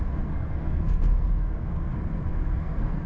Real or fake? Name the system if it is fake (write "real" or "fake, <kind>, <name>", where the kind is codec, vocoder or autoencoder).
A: fake, codec, SNAC